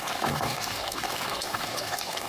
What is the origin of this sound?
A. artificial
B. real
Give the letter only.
A